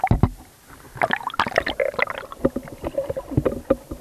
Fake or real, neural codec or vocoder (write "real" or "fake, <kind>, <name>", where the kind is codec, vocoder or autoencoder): real